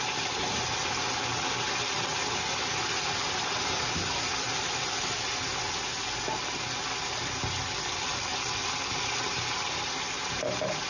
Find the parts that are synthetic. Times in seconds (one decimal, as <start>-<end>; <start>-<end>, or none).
none